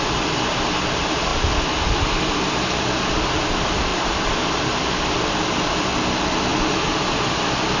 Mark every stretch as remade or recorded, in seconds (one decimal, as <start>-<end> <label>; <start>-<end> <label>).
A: 0.0-3.9 recorded; 3.9-4.8 remade; 4.8-7.8 recorded